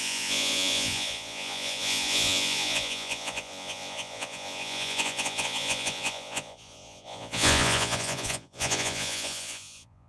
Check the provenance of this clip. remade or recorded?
remade